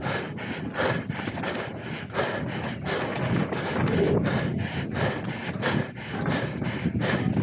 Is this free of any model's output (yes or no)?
yes